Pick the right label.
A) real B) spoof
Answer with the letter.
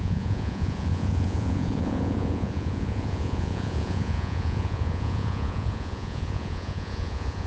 B